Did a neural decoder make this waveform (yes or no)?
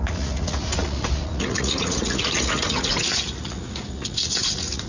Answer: yes